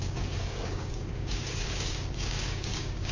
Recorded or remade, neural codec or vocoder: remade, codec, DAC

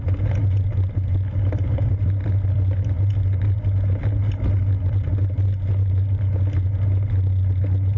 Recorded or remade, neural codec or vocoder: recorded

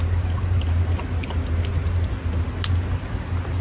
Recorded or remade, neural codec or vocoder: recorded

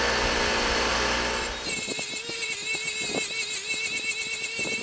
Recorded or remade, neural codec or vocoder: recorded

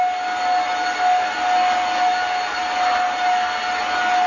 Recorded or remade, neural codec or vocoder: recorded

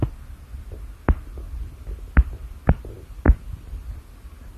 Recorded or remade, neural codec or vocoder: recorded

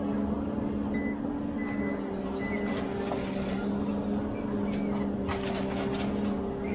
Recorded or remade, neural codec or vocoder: recorded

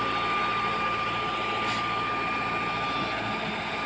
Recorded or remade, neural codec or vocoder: recorded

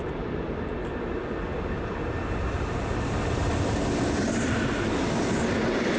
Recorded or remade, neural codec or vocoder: recorded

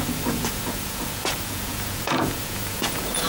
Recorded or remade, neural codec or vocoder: remade, vocoder, Vocos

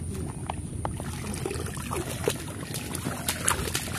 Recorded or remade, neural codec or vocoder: recorded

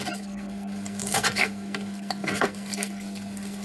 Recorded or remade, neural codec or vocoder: remade, codec, SNAC